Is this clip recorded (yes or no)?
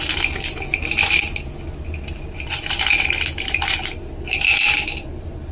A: yes